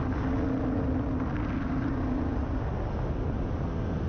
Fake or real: real